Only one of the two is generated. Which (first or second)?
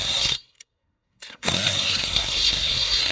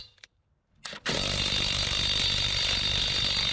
first